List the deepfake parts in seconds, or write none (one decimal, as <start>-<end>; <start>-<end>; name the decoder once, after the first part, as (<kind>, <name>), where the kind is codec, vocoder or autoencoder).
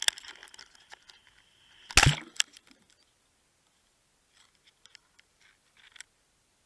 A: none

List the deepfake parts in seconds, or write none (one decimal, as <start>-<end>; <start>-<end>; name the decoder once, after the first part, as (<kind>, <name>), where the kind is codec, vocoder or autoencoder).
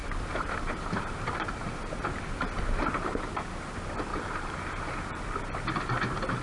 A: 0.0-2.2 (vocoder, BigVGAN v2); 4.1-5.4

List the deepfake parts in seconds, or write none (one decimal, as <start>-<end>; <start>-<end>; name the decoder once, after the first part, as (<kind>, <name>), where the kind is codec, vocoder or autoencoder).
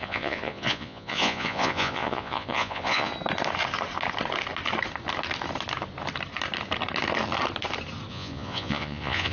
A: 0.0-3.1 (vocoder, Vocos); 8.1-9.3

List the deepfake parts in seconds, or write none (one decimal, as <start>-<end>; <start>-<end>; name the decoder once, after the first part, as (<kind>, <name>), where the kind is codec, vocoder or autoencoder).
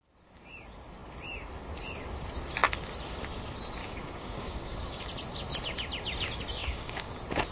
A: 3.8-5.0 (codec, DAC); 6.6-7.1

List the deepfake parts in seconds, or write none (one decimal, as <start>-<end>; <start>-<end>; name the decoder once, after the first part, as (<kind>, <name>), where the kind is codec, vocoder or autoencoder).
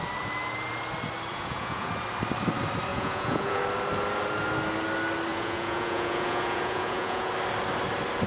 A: 1.3-1.9 (vocoder, Vocos); 2.9-3.6; 5.3-7.3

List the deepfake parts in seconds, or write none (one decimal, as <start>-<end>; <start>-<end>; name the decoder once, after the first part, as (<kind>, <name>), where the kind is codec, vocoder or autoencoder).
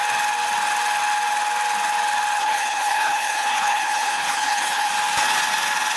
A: 2.4-4.9 (codec, HILCodec)